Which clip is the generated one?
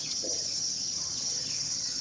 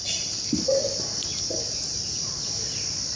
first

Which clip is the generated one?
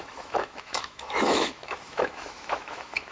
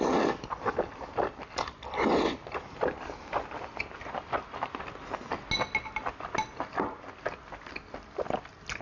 first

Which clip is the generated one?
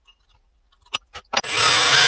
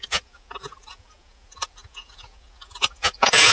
second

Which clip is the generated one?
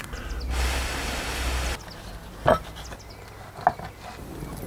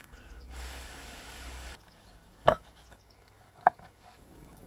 second